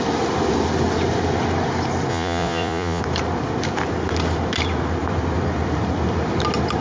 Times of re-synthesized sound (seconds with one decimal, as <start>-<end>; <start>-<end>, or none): 2.1-3.0